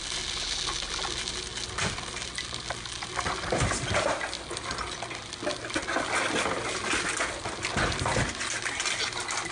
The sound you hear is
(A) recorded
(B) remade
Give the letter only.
A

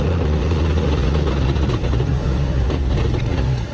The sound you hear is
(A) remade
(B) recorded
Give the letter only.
A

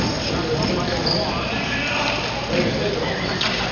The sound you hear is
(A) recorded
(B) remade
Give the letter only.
A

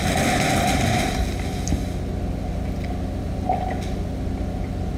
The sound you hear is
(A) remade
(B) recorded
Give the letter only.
B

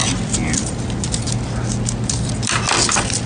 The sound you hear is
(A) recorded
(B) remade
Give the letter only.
A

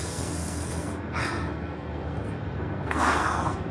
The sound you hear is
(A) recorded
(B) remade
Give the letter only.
B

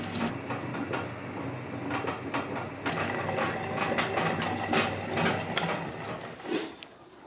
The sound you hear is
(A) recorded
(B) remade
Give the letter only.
A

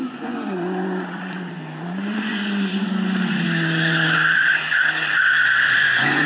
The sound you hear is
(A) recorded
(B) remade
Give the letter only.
B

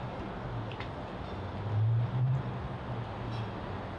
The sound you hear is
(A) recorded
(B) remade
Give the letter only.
A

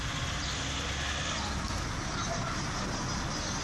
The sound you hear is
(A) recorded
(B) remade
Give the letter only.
A